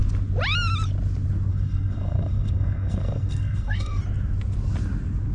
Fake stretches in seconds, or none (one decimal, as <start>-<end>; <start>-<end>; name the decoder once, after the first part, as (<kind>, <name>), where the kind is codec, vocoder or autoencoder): 1.5-4.0 (codec, SNAC)